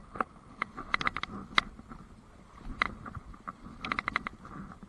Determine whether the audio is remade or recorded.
recorded